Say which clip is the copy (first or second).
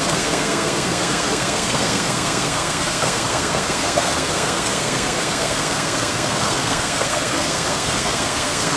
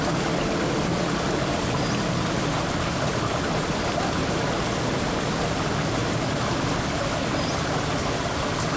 first